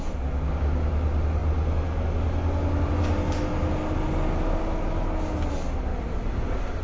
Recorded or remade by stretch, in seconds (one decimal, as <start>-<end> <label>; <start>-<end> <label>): 0.0-5.9 recorded; 5.9-6.8 remade